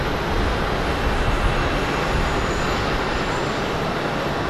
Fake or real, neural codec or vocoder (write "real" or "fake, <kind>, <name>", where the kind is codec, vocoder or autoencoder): real